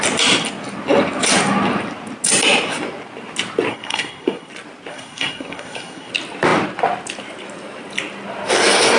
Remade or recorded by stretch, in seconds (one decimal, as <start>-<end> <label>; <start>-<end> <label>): 0.0-3.7 recorded; 3.7-4.5 remade; 4.5-4.9 recorded; 4.9-6.1 remade; 6.1-9.0 recorded